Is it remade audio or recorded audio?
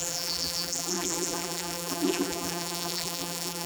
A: remade